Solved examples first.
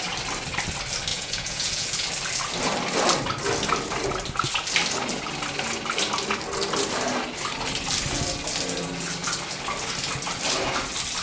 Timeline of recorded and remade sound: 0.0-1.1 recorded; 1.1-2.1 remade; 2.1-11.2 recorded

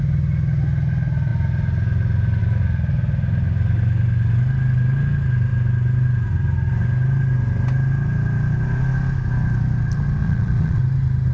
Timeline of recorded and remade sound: 0.0-10.2 recorded; 10.2-10.8 remade; 10.8-11.3 recorded

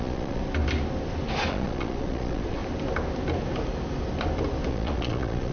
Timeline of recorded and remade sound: 0.0-0.4 remade; 0.4-1.5 recorded; 1.5-2.6 remade; 2.6-4.7 recorded; 4.7-5.5 remade

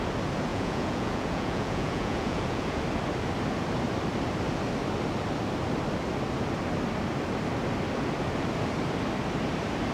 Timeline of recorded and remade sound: 0.0-0.5 recorded; 0.5-2.8 remade; 2.8-9.9 recorded

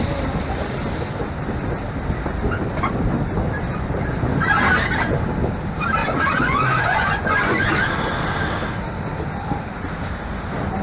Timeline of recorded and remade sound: 0.0-6.0 recorded; 6.0-7.7 remade; 7.7-10.8 recorded